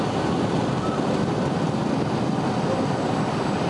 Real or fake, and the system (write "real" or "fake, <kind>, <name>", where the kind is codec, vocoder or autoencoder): real